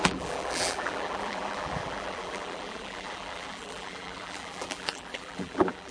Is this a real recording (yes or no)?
no